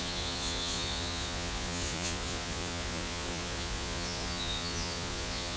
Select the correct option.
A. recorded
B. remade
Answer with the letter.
B